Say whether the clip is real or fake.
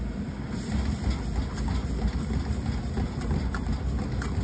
real